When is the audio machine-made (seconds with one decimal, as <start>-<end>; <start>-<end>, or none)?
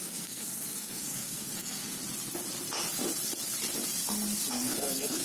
0.0-2.0; 4.5-5.2